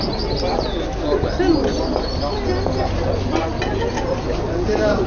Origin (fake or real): real